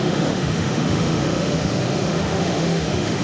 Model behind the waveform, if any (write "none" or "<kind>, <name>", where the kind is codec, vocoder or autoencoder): autoencoder, DAC-VAE